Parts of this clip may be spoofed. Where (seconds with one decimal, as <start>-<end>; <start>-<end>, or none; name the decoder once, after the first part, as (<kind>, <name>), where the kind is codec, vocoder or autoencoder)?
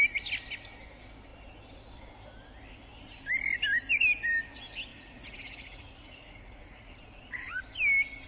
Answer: 4.9-7.6 (vocoder, Vocos)